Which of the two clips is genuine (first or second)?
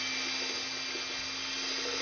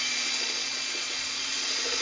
first